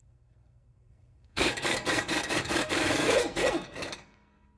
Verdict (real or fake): fake